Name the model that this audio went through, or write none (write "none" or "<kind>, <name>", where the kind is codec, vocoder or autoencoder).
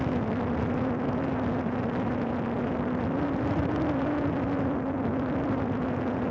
none